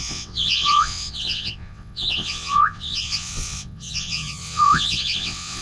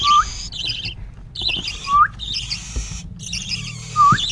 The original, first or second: second